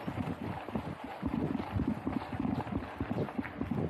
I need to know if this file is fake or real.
real